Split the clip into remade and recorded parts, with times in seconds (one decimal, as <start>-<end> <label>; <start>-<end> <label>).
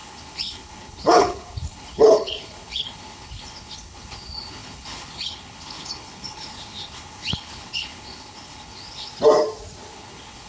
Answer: 0.0-9.1 remade; 9.1-9.9 recorded; 9.9-10.5 remade